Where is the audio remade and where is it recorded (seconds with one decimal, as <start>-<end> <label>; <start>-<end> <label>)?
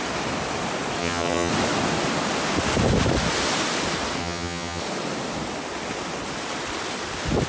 0.0-1.0 recorded; 1.0-1.5 remade; 1.5-4.2 recorded; 4.2-4.8 remade; 4.8-7.5 recorded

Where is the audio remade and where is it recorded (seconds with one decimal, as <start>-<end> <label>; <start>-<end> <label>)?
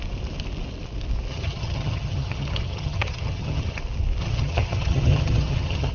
0.0-1.3 recorded; 1.3-3.8 remade; 3.8-4.2 recorded; 4.2-5.9 remade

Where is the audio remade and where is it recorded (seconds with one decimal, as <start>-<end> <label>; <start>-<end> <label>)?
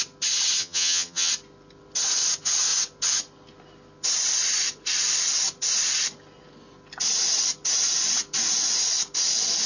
0.0-0.6 recorded; 0.6-1.3 remade; 1.3-9.7 recorded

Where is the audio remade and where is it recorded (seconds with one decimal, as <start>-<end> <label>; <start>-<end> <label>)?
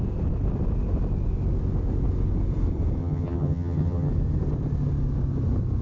0.0-3.0 recorded; 3.0-4.1 remade; 4.1-5.8 recorded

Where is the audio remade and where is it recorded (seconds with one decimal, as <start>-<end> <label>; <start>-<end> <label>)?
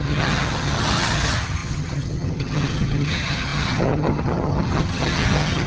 0.0-5.7 remade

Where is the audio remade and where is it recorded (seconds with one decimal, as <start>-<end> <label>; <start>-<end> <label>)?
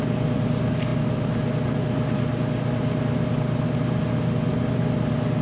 0.0-5.4 recorded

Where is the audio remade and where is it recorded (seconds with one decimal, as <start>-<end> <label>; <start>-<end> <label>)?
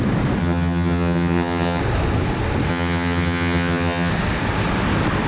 0.0-0.4 recorded; 0.4-1.8 remade; 1.8-2.7 recorded; 2.7-4.1 remade; 4.1-5.3 recorded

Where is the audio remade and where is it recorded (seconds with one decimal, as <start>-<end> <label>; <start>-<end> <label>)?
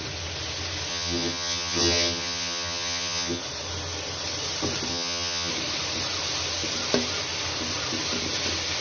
0.0-0.9 recorded; 0.9-3.4 remade; 3.4-4.9 recorded; 4.9-5.5 remade; 5.5-8.8 recorded